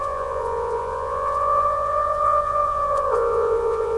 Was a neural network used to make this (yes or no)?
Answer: yes